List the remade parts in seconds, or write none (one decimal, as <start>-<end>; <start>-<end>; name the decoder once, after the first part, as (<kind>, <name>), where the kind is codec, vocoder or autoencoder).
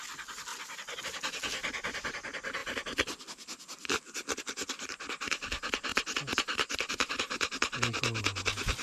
none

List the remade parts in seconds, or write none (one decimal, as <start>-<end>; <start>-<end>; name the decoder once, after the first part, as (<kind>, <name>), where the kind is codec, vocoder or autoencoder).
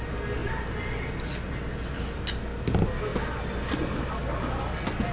none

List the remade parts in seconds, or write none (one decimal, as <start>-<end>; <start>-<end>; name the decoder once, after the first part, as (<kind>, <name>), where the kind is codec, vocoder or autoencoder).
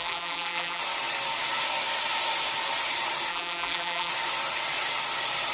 0.0-0.8 (vocoder, BigVGAN v2); 3.3-4.1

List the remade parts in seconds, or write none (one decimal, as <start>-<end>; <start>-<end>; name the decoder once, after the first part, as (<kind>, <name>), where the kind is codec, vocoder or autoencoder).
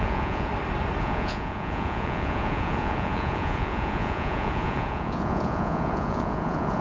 0.0-0.5 (vocoder, Vocos); 1.0-6.8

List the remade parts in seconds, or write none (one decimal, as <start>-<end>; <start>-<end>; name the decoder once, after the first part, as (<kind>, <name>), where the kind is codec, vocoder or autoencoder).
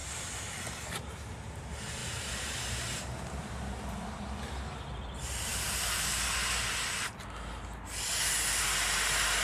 2.0-4.2 (vocoder, BigVGAN v2)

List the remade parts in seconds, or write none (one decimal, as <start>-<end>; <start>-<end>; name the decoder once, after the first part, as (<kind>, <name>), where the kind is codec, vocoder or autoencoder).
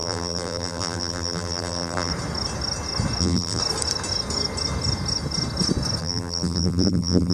0.0-2.1 (vocoder, BigVGAN v2); 3.2-3.6; 6.0-7.3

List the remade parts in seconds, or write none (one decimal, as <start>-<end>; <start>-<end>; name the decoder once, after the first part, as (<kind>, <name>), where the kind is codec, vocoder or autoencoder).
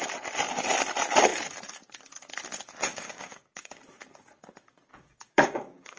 2.9-3.8 (codec, DAC); 4.9-6.0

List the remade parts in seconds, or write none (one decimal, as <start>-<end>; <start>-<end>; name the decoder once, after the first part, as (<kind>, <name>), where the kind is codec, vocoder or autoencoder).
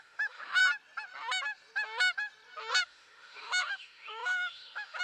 0.0-0.6 (autoencoder, DAC-VAE); 2.8-5.0